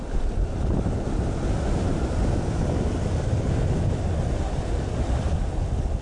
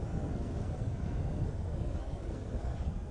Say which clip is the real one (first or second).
first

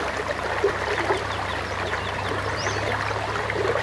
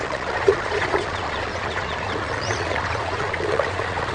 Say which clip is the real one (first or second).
first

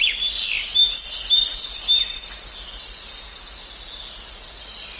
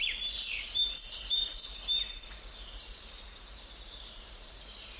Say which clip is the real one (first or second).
first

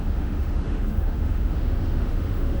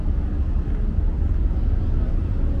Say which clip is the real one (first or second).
second